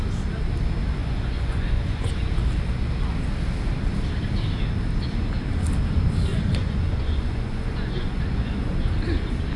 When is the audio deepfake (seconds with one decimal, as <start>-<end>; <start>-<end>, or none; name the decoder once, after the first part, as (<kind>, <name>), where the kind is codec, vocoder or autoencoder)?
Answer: 1.0-2.1 (vocoder, Vocos); 6.3-8.8

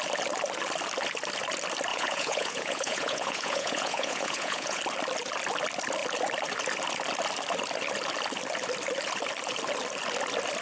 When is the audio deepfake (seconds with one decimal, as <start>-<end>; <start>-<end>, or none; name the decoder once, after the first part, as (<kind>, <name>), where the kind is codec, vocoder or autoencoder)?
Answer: 1.9-4.8 (vocoder, Vocos)

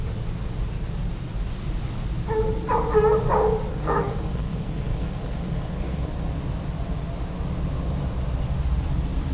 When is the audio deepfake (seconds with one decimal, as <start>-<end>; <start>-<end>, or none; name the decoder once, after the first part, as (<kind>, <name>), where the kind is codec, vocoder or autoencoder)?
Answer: 3.7-6.3 (codec, SNAC)